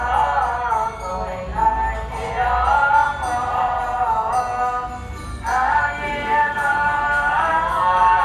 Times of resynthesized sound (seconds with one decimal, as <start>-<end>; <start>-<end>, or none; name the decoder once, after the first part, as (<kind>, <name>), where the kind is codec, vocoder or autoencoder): 0.5-1.1 (codec, DAC); 5.3-8.2